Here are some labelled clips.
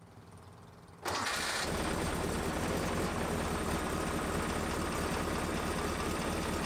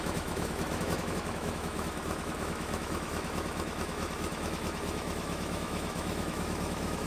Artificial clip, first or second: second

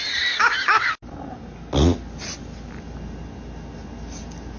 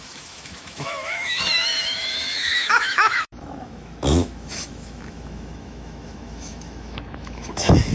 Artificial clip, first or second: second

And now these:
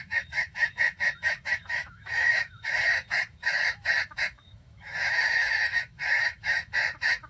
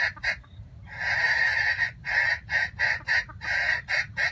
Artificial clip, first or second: first